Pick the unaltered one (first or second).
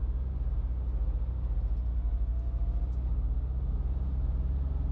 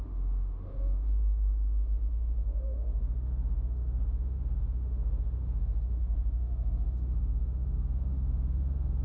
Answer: first